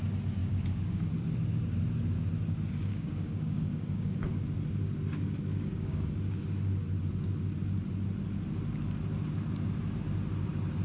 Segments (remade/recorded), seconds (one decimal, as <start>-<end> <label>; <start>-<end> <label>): 0.0-0.4 recorded; 0.4-1.1 remade; 1.1-2.9 recorded; 2.9-4.4 remade; 4.4-5.5 recorded; 5.5-6.1 remade; 6.1-10.8 recorded

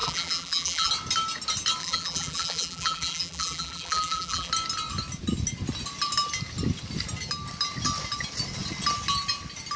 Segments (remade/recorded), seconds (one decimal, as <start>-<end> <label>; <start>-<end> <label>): 0.0-0.9 remade; 0.9-1.8 recorded; 1.8-4.5 remade; 4.5-9.8 recorded

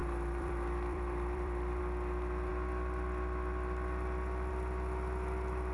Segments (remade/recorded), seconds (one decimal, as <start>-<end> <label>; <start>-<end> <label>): 0.0-1.8 remade; 1.8-5.7 recorded

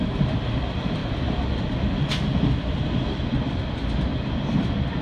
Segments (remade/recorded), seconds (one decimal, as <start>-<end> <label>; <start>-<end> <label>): 0.0-1.0 remade; 1.0-3.5 recorded; 3.5-4.1 remade; 4.1-5.0 recorded

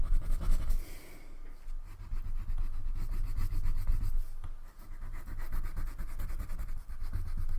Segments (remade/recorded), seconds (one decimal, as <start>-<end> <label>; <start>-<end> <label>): 0.0-7.6 recorded

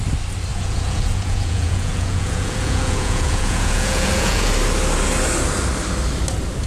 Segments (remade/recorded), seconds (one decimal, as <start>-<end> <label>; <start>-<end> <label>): 0.0-0.5 recorded; 0.5-4.5 remade; 4.5-6.7 recorded